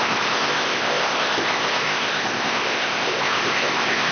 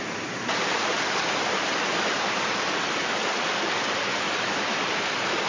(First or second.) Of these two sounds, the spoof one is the first